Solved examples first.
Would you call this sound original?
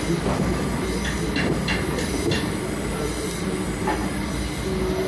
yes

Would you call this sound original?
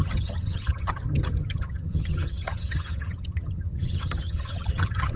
no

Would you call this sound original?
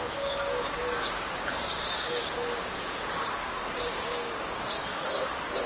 no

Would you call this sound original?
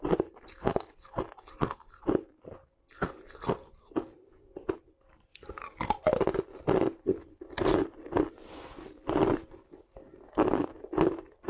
yes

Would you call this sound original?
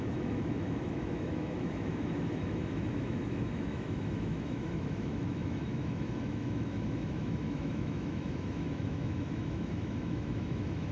no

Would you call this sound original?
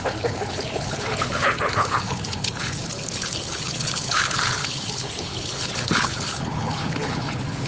no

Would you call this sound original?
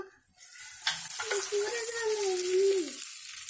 yes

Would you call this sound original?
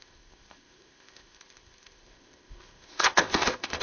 no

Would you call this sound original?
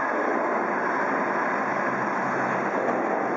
yes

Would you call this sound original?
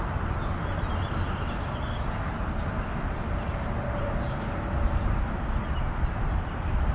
yes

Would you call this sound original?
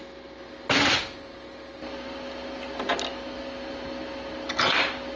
yes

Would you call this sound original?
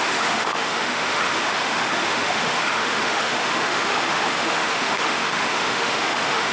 no